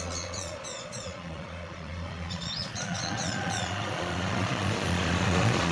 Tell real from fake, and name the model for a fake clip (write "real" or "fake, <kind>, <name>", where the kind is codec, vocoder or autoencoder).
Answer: fake, vocoder, Vocos